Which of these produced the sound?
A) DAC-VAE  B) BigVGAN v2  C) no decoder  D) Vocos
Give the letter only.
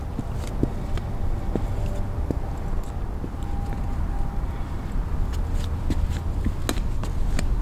C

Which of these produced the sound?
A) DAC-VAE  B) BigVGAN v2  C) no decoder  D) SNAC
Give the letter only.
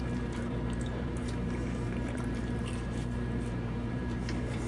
B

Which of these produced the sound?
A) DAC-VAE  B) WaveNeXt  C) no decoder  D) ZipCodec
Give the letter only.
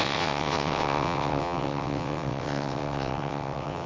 B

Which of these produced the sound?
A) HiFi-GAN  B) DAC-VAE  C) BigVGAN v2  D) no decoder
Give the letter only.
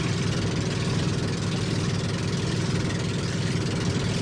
D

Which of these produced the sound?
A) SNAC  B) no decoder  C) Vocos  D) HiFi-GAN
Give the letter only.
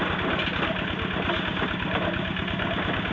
B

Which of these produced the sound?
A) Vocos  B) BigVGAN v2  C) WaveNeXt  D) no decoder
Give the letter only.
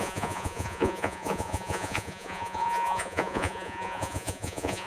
A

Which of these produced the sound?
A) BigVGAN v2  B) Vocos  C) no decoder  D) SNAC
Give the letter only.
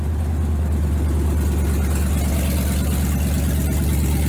C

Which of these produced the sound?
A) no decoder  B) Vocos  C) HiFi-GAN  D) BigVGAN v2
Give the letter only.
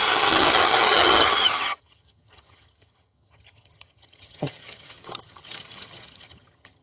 C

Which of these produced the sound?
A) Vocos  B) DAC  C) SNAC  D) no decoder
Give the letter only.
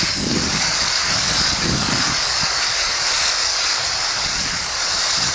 B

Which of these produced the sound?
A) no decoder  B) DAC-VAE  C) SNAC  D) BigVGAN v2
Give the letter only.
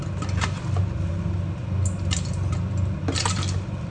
A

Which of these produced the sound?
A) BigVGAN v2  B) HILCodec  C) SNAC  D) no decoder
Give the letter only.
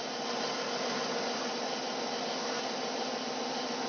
D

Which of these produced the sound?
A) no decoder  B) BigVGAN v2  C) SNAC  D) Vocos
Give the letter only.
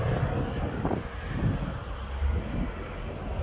A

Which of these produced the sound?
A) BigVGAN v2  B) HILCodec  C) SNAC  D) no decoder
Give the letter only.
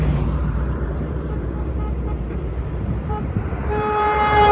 A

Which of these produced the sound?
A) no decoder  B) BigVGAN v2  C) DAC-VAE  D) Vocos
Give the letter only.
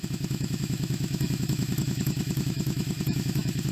C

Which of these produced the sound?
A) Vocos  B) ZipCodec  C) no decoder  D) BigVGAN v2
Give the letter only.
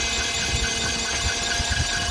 C